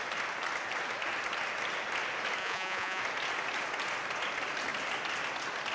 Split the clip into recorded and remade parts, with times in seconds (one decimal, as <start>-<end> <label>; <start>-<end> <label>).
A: 0.0-2.4 recorded; 2.4-3.0 remade; 3.0-5.7 recorded